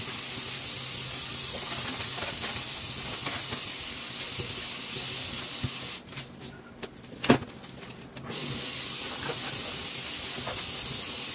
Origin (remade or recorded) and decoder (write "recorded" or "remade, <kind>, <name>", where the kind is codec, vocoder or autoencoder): recorded